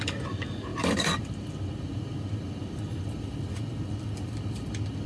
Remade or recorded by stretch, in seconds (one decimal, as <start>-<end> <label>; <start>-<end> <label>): 0.0-0.7 recorded; 0.7-1.2 remade; 1.2-5.1 recorded